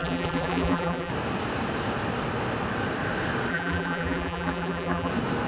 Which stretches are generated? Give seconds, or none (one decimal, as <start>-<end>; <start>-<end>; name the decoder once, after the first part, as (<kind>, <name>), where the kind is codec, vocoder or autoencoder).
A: 0.0-1.1 (vocoder, BigVGAN v2); 3.5-5.1